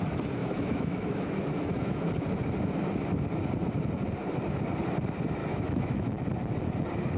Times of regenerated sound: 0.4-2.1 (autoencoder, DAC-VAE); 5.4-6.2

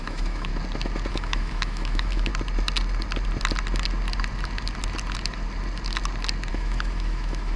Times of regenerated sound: 0.0-0.5 (autoencoder, DAC-VAE); 1.1-2.3; 6.5-7.6

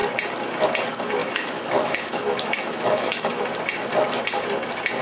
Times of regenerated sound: 1.2-3.4 (autoencoder, DAC-VAE)

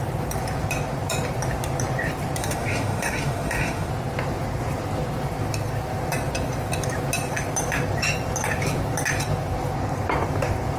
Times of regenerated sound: 2.4-3.9 (autoencoder, DAC-VAE)

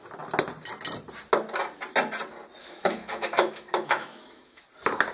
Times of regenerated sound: 2.6-4.6 (autoencoder, DAC-VAE)

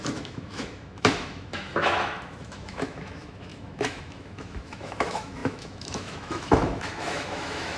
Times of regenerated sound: 0.0-7.8 (autoencoder, DAC-VAE)

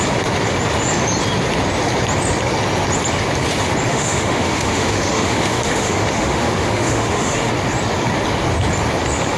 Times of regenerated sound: 3.9-7.5 (autoencoder, DAC-VAE)